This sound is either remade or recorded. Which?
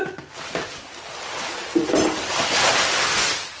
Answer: recorded